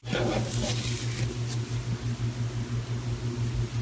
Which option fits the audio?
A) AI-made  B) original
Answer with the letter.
B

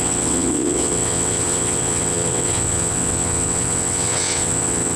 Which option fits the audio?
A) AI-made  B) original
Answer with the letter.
A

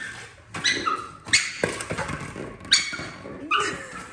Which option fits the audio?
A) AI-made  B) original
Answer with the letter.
B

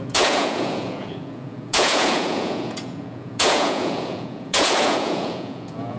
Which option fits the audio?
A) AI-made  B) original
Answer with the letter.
A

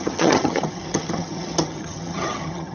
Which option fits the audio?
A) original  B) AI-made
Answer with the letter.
B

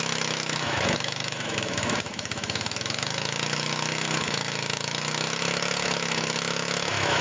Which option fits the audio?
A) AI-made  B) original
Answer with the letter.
A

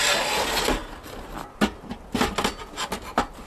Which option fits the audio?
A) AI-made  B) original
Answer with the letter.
B